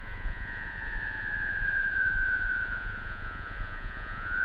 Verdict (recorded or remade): remade